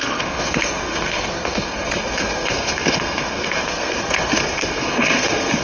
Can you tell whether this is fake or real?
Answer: fake